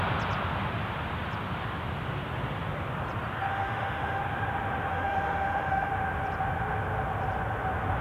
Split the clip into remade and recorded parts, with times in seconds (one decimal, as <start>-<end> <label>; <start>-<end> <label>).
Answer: 0.0-3.5 recorded; 3.5-4.2 remade; 4.2-4.9 recorded; 4.9-5.9 remade; 5.9-8.0 recorded